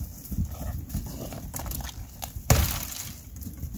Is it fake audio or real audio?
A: fake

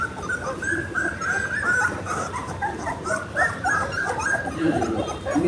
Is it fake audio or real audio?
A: fake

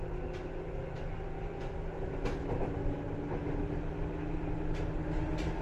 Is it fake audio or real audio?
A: real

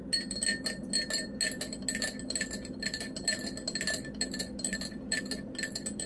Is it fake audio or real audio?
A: real